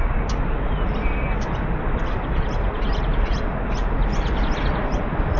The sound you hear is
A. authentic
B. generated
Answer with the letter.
A